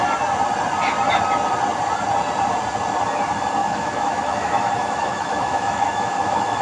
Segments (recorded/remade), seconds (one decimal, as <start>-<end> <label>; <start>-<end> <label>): 0.0-3.6 recorded; 3.6-6.6 remade